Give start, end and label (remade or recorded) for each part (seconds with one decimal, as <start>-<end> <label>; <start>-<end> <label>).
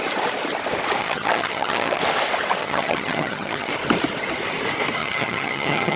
0.0-1.0 recorded; 1.0-2.0 remade; 2.0-2.6 recorded; 2.6-3.7 remade; 3.7-5.0 recorded; 5.0-6.0 remade